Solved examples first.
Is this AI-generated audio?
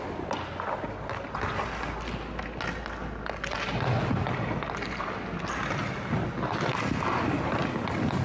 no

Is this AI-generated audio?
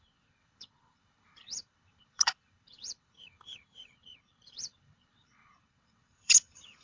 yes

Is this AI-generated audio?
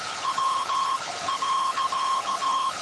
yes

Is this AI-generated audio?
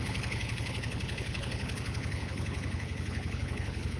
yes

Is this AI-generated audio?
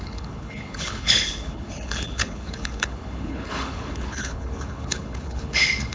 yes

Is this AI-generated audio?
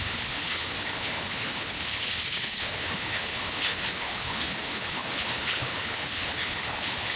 yes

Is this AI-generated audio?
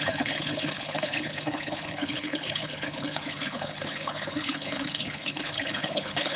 yes